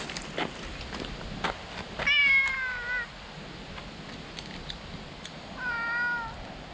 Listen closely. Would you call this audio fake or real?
real